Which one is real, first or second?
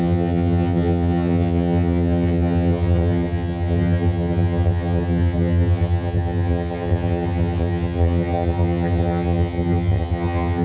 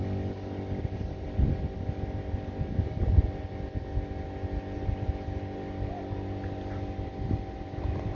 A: second